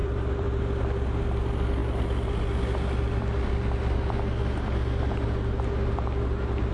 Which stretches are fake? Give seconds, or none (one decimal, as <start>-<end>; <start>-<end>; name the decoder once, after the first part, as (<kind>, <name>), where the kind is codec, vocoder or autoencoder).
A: 0.0-0.6 (vocoder, BigVGAN v2)